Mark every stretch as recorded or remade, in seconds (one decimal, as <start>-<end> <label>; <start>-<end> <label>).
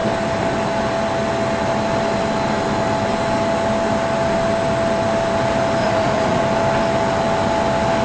0.0-5.8 recorded; 5.8-6.4 remade; 6.4-8.0 recorded